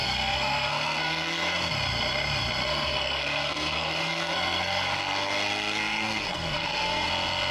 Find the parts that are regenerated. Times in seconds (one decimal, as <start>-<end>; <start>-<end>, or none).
0.0-1.7; 2.6-7.1